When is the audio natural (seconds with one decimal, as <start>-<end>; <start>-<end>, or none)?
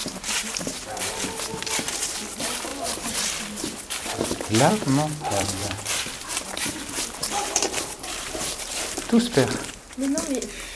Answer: 0.7-5.6; 8.8-10.8